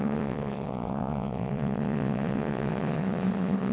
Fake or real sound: fake